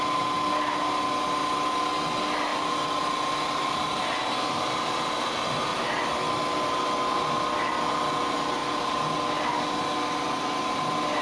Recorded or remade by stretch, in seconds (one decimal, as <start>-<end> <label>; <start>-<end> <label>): 0.0-11.2 recorded